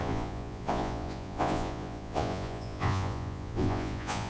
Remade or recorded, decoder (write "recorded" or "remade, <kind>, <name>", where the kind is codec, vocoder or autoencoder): remade, vocoder, Vocos